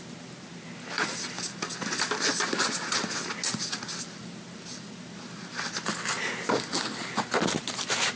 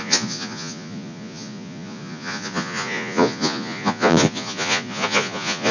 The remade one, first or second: second